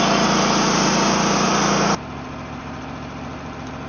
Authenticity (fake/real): fake